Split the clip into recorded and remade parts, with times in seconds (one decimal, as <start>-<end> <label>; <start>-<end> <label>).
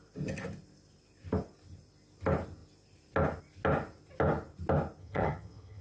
0.0-5.0 recorded; 5.0-5.8 remade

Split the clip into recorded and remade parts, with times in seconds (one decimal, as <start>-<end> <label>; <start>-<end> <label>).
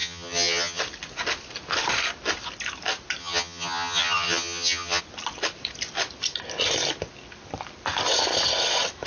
0.0-0.8 remade; 0.8-3.2 recorded; 3.2-5.0 remade; 5.0-9.1 recorded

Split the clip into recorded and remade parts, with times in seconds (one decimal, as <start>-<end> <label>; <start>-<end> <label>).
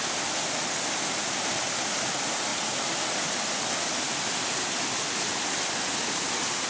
0.0-6.7 recorded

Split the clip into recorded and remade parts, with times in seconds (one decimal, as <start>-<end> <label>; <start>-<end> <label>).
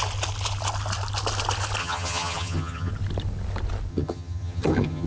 0.0-1.8 recorded; 1.8-2.9 remade; 2.9-3.9 recorded; 3.9-5.1 remade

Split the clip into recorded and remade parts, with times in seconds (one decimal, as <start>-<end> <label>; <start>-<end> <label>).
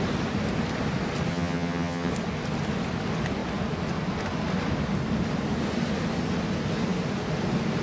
0.0-1.3 recorded; 1.3-2.1 remade; 2.1-7.8 recorded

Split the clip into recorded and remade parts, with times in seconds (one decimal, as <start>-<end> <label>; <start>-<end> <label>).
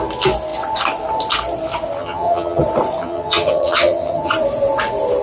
0.0-2.0 recorded; 2.0-2.6 remade; 2.6-3.0 recorded; 3.0-4.3 remade; 4.3-5.2 recorded